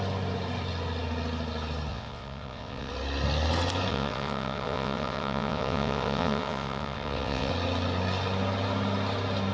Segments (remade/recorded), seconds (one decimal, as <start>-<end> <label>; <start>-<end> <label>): 0.0-1.9 recorded; 1.9-2.9 remade; 2.9-3.9 recorded; 3.9-7.5 remade; 7.5-9.5 recorded